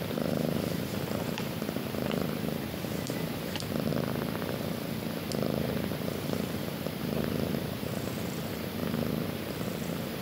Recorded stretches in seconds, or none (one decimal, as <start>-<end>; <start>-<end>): 3.9-5.2; 8.8-9.7